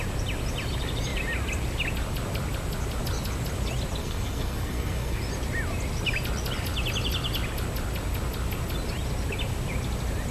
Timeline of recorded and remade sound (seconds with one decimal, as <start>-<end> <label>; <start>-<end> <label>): 0.0-4.0 recorded; 4.0-5.2 remade; 5.2-10.3 recorded